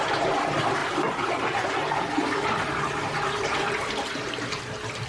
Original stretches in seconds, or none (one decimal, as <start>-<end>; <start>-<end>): 0.0-0.8; 3.9-5.1